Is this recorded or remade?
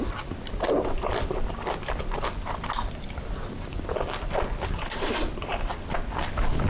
recorded